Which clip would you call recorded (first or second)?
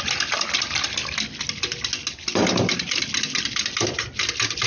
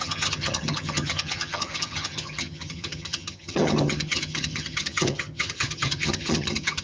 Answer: first